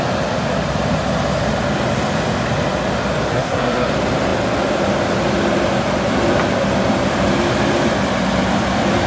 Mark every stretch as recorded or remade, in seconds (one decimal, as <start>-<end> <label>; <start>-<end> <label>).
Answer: 0.0-3.3 recorded; 3.3-3.9 remade; 3.9-9.1 recorded